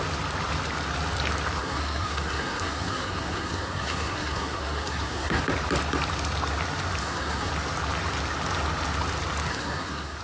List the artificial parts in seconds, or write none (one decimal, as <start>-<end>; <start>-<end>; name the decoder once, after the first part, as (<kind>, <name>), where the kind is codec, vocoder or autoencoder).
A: 1.6-5.4 (codec, SNAC); 7.0-7.5; 9.5-10.2